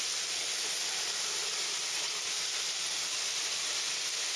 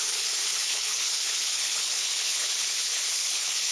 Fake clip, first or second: second